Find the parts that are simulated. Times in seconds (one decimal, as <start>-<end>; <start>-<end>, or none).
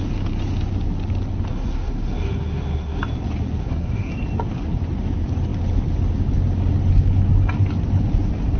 1.5-3.0; 3.6-4.1